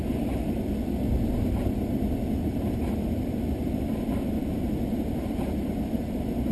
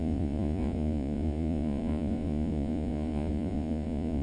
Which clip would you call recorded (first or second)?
first